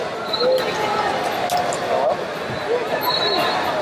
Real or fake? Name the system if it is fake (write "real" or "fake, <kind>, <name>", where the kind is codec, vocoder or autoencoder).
real